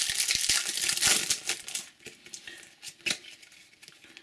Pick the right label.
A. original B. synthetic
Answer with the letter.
A